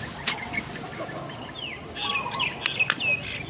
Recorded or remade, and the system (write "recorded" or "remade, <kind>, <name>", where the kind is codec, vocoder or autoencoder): recorded